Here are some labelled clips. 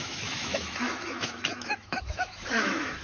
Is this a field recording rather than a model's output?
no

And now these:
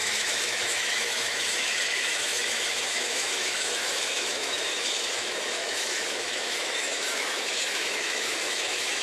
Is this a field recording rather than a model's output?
no